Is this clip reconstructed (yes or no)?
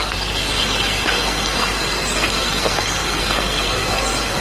yes